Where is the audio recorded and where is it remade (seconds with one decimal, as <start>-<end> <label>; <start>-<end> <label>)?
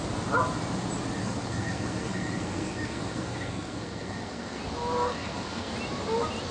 0.0-1.2 recorded; 1.2-4.6 remade; 4.6-5.1 recorded; 5.1-5.7 remade; 5.7-6.5 recorded